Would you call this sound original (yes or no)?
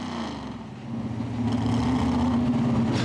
yes